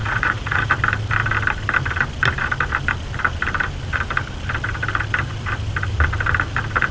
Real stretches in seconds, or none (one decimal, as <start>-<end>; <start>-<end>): 0.7-6.9